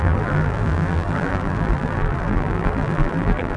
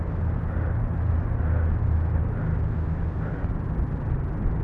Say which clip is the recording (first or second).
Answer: second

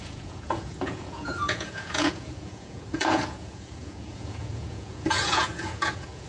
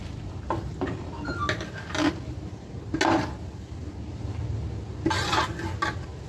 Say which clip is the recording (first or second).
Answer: second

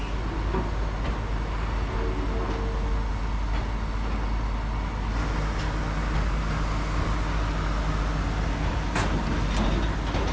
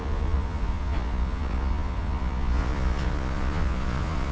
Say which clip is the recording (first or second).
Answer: first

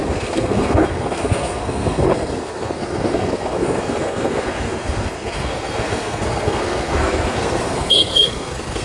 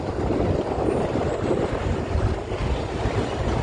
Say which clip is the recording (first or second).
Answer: second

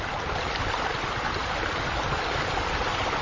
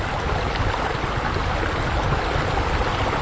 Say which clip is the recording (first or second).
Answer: second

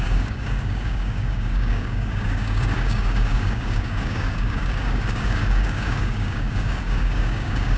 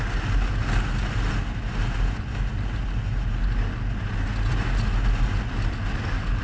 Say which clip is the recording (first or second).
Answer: second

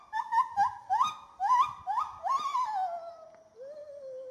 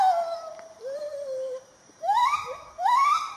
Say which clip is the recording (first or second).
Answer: first